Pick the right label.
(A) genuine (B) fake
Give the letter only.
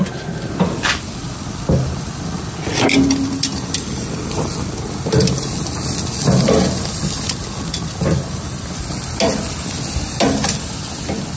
A